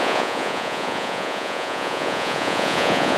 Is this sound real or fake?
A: fake